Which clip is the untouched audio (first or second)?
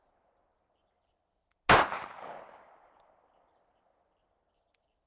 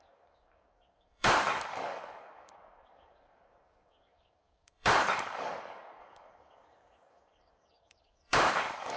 first